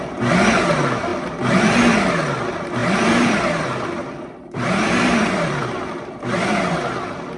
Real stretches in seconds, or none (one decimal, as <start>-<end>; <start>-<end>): 0.0-1.1; 1.6-2.8; 6.2-7.4